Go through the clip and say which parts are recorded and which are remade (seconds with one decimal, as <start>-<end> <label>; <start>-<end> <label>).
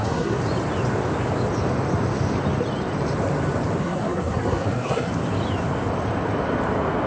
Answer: 0.0-0.4 remade; 0.4-3.8 recorded; 3.8-5.1 remade; 5.1-7.1 recorded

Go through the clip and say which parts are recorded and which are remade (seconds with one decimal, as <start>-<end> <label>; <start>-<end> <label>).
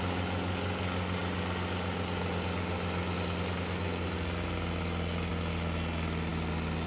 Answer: 0.0-6.9 recorded